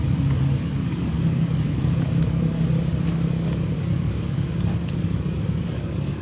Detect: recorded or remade remade